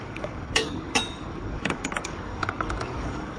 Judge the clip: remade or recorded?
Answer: remade